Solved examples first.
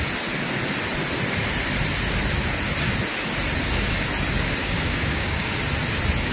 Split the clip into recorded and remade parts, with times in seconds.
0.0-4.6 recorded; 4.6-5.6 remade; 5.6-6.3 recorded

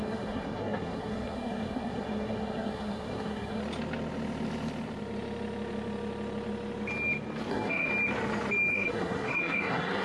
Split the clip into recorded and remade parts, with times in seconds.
0.0-3.6 remade; 3.6-7.5 recorded; 7.5-7.9 remade; 7.9-8.7 recorded; 8.7-10.0 remade